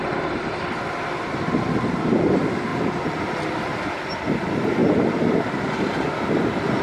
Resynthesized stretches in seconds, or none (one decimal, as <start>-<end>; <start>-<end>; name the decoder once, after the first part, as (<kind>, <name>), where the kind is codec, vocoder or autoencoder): none